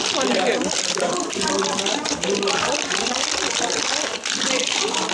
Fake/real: fake